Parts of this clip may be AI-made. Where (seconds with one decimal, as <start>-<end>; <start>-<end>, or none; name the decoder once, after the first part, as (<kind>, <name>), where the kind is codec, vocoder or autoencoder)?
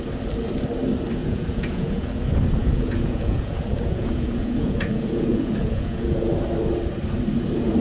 1.2-2.2 (vocoder, Vocos); 2.6-6.3